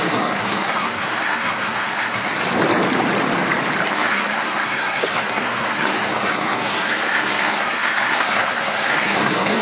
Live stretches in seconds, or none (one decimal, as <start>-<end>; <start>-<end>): 2.3-3.9